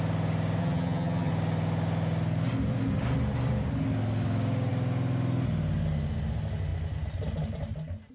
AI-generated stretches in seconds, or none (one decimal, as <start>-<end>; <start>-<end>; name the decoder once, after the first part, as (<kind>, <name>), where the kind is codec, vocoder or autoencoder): 0.6-1.3 (vocoder, HiFi-GAN)